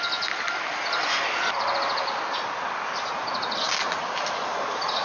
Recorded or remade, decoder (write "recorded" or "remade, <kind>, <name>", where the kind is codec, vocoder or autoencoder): recorded